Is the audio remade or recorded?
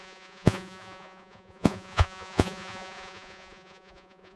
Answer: remade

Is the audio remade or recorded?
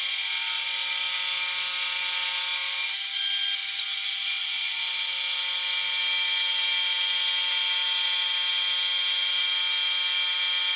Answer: recorded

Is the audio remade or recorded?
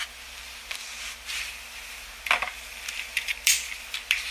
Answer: recorded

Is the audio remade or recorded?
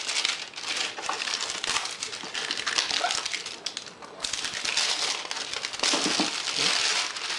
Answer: recorded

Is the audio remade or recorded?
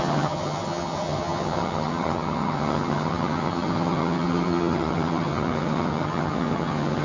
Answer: remade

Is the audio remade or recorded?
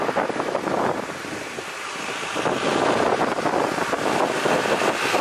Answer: recorded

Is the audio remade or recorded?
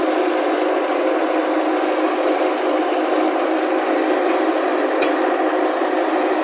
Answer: recorded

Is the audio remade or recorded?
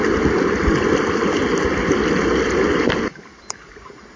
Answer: recorded